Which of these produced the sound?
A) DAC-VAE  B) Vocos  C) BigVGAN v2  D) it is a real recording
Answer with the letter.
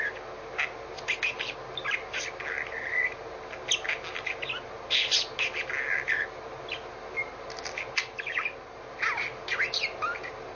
D